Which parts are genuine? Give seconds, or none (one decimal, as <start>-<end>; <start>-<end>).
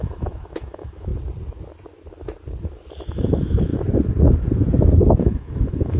1.1-3.1; 3.7-5.2